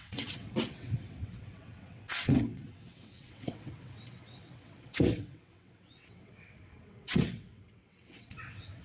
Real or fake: fake